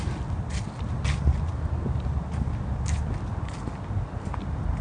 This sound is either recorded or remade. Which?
recorded